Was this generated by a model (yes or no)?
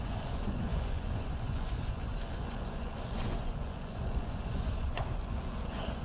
yes